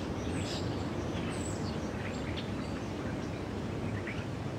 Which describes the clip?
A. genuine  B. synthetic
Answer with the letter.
A